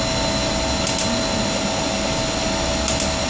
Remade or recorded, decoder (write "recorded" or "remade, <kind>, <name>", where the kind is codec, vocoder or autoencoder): recorded